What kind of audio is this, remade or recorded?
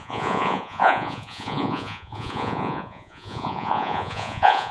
remade